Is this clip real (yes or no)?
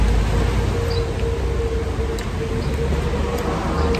yes